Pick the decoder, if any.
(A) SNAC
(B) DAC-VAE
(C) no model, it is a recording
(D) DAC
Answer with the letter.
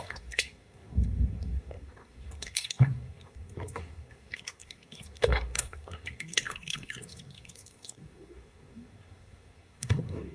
A